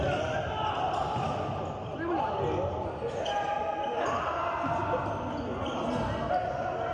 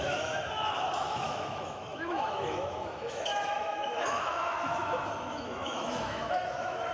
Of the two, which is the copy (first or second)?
second